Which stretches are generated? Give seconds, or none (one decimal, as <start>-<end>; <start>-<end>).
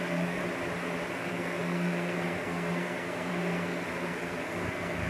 0.0-0.4; 1.1-5.1